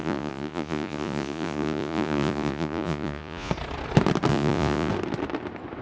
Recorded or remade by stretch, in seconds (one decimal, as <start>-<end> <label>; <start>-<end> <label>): 0.0-3.5 remade; 3.5-4.3 recorded; 4.3-4.9 remade; 4.9-5.8 recorded